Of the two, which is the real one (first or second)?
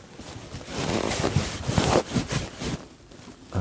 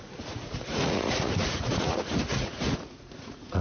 first